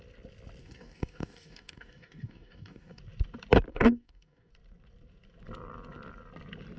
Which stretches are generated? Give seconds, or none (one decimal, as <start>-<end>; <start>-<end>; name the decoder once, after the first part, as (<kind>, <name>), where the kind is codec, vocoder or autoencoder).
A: 0.6-3.0 (codec, DAC); 3.7-4.5